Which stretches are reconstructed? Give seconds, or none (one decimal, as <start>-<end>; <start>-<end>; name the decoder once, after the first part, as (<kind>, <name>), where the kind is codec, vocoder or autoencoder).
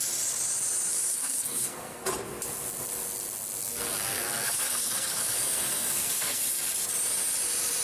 0.9-2.1 (codec, SNAC); 3.6-6.4